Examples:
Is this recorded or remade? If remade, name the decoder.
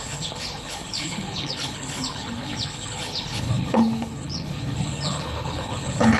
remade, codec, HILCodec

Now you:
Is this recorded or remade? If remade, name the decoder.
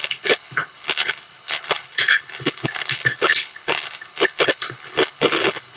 remade, codec, HILCodec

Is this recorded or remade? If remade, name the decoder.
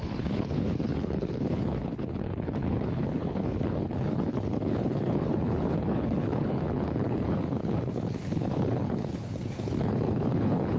remade, codec, HILCodec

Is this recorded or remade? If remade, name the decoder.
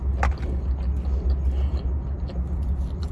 recorded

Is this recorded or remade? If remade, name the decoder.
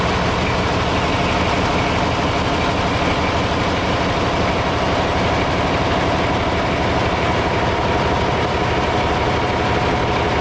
recorded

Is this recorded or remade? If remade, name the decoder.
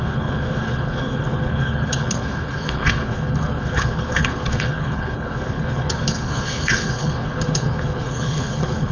remade, codec, HILCodec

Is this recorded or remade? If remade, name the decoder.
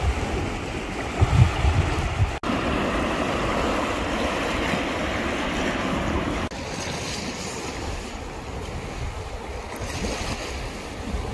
recorded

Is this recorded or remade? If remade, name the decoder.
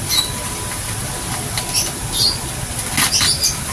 recorded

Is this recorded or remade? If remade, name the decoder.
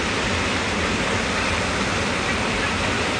recorded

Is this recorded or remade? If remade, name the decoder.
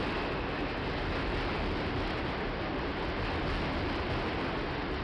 recorded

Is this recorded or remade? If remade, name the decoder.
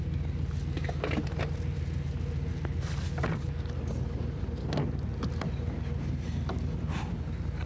recorded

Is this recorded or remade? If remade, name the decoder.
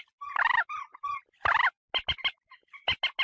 recorded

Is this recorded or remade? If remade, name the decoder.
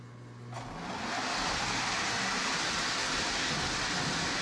recorded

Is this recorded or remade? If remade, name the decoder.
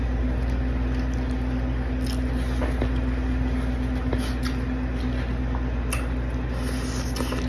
recorded